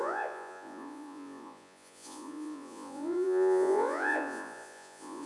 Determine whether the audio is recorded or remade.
remade